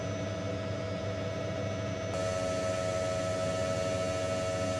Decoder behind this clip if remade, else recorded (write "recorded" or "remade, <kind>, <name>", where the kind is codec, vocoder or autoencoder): recorded